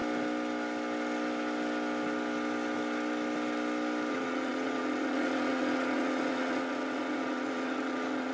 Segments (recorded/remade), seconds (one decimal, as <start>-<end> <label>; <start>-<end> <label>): 0.0-4.1 recorded; 4.1-8.3 remade